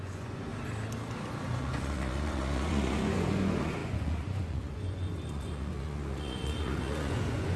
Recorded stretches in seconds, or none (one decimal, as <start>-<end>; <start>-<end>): 0.5-1.6

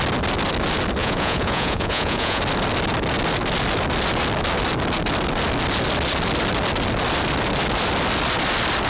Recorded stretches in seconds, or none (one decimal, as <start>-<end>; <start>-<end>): 0.0-1.0; 2.4-8.9